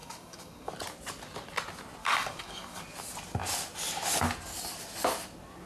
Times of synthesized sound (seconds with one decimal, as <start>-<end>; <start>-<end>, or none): 0.0-0.7; 2.0-2.8

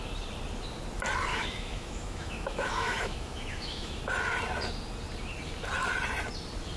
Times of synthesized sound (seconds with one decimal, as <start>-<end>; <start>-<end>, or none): 1.3-4.0

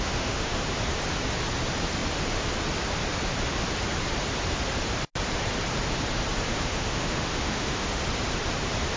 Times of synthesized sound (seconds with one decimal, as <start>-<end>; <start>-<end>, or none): 0.0-0.6; 6.5-8.0

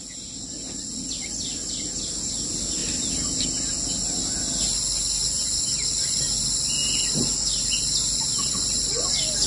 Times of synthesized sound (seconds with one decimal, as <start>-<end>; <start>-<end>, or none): none

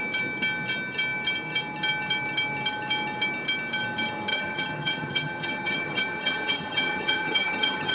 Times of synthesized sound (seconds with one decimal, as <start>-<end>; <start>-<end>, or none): 4.3-7.9